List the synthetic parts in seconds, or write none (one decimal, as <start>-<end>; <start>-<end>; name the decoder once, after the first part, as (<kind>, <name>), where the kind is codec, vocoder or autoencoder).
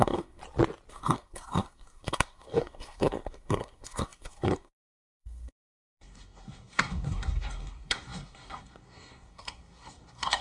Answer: 0.0-0.4 (codec, SNAC); 0.9-10.4